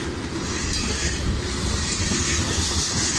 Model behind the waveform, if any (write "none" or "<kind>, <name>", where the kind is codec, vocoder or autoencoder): none